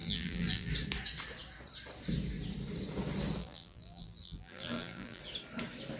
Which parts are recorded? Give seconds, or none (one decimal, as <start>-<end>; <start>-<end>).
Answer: 0.7-3.4; 5.2-6.0